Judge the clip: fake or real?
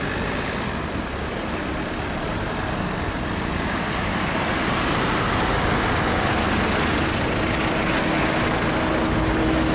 real